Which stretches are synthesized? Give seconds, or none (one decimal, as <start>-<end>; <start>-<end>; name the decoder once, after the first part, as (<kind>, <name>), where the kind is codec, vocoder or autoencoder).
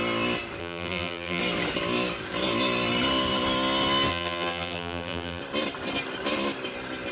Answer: 0.6-1.4 (vocoder, BigVGAN v2); 4.1-5.4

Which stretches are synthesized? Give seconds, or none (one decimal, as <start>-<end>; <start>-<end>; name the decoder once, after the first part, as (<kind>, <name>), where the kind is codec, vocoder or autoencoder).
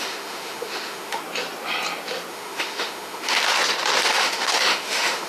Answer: 0.0-1.2 (autoencoder, DAC-VAE); 2.3-3.4; 4.1-5.3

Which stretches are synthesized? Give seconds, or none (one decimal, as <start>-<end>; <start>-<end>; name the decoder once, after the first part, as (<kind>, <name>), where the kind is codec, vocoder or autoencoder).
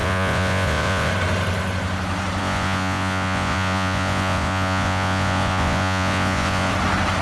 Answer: 0.0-1.1 (vocoder, Vocos); 2.4-6.7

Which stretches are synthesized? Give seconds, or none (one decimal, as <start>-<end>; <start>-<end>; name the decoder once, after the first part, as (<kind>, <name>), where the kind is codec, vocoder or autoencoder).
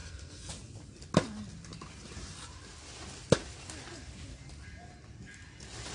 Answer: 0.0-0.5 (codec, SNAC)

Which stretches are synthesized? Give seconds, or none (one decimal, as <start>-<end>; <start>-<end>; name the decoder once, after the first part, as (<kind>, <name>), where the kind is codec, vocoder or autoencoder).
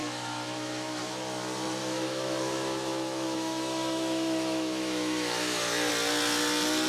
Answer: 0.0-1.0 (autoencoder, DAC-VAE); 1.8-5.9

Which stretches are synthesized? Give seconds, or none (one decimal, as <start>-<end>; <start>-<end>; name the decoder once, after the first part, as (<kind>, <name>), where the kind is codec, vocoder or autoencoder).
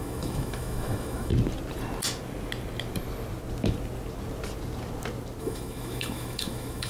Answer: 0.0-1.3 (autoencoder, DAC-VAE); 5.4-6.9